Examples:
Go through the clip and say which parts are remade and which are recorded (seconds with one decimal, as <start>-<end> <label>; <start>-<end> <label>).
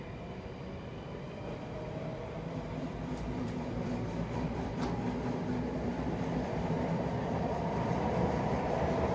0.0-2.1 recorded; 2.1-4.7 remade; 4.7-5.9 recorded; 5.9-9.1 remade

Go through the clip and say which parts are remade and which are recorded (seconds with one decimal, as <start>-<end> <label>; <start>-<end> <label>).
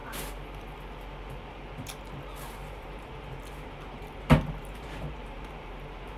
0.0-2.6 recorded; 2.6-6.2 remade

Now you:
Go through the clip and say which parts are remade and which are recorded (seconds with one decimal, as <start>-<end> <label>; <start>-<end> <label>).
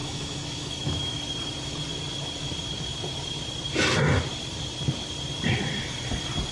0.0-1.2 remade; 1.2-6.5 recorded